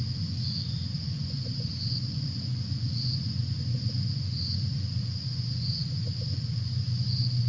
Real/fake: fake